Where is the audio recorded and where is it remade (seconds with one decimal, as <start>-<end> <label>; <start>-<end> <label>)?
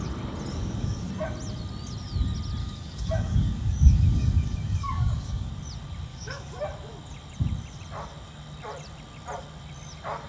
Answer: 0.0-0.5 recorded; 0.5-1.1 remade; 1.1-2.6 recorded; 2.6-5.5 remade; 5.5-6.1 recorded; 6.1-6.6 remade; 6.6-10.3 recorded